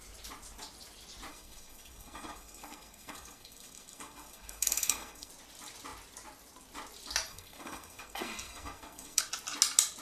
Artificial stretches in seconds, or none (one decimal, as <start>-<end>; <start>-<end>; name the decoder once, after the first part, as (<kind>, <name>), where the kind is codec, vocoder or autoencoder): 1.3-5.3 (codec, SNAC); 7.3-9.2